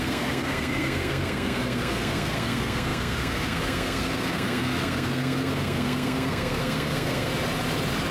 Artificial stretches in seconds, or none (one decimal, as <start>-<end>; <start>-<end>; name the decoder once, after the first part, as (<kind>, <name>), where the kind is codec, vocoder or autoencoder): 0.0-7.3 (codec, SNAC)